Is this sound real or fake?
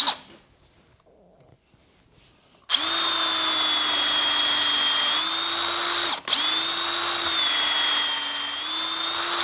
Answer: real